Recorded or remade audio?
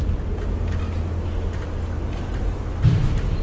recorded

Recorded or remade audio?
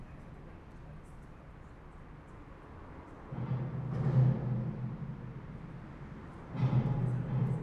recorded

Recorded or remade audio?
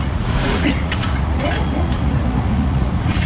remade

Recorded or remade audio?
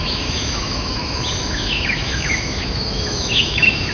remade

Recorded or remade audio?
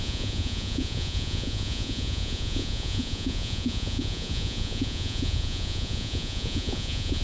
remade